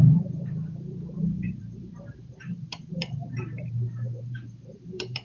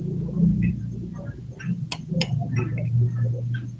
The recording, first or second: second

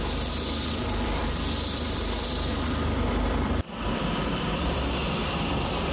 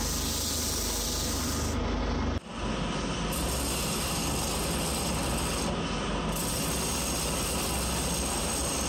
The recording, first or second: second